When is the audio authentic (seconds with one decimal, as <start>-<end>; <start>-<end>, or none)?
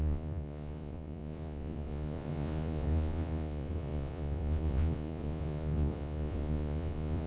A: none